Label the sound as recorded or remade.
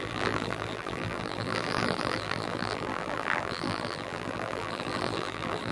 remade